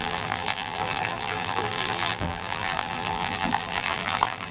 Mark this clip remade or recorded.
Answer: remade